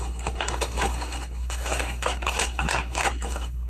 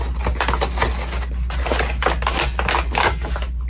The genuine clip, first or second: second